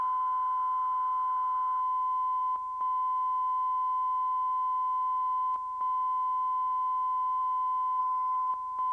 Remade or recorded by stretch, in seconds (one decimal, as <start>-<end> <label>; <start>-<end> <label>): 0.0-8.0 recorded; 8.0-8.5 remade; 8.5-8.9 recorded